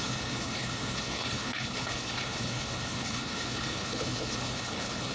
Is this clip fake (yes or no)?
yes